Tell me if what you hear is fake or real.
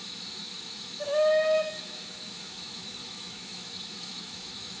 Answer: fake